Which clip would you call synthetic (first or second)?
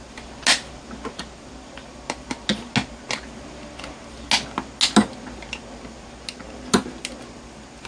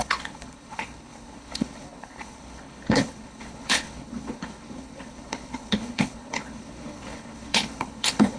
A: second